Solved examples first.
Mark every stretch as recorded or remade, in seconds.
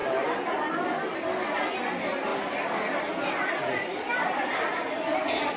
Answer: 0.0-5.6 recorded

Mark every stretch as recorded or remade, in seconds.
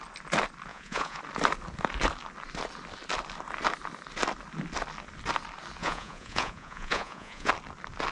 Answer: 0.0-0.7 recorded; 0.7-1.2 remade; 1.2-5.8 recorded; 5.8-7.5 remade; 7.5-8.1 recorded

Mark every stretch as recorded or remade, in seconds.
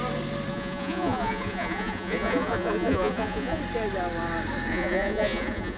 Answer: 0.0-0.5 recorded; 0.5-3.6 remade; 3.6-4.7 recorded; 4.7-5.8 remade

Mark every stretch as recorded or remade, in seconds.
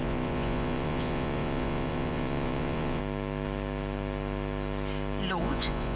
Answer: 0.0-3.0 remade; 3.0-5.4 recorded; 5.4-6.0 remade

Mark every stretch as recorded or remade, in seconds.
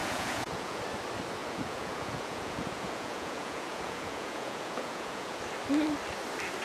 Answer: 0.0-0.8 remade; 0.8-1.4 recorded; 1.4-5.4 remade; 5.4-6.6 recorded